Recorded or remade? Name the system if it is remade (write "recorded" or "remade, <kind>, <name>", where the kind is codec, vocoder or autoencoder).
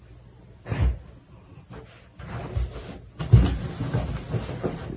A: recorded